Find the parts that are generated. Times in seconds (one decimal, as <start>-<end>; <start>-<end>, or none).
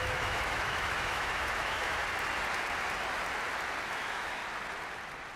0.0-2.0; 3.9-4.4